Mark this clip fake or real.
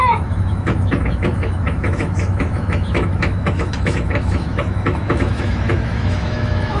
fake